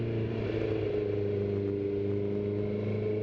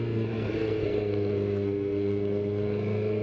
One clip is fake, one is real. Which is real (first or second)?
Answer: first